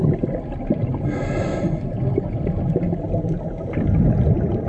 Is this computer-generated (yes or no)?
no